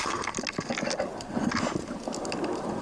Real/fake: real